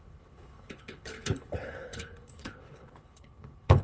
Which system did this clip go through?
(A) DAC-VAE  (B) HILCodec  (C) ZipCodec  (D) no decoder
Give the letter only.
B